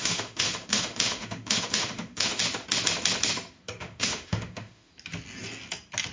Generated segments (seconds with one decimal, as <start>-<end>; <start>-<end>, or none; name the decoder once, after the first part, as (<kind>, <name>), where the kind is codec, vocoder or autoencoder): 0.0-2.4 (autoencoder, DAC-VAE); 3.8-4.9